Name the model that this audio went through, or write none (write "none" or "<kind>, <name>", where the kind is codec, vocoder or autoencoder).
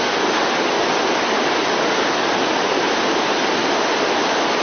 none